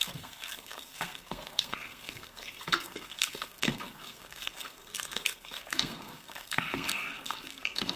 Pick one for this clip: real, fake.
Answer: fake